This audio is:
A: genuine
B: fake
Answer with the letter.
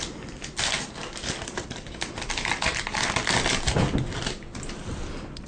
A